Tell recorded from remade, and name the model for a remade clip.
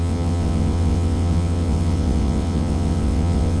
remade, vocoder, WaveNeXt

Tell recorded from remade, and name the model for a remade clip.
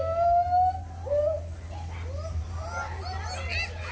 recorded